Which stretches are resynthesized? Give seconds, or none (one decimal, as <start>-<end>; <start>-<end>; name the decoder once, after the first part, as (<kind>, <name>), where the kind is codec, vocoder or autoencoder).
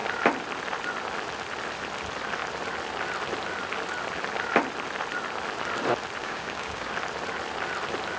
6.2-6.9 (codec, DAC)